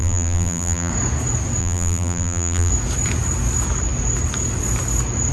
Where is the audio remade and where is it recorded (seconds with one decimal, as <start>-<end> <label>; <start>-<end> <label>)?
0.0-0.9 remade; 0.9-1.6 recorded; 1.6-2.7 remade; 2.7-5.3 recorded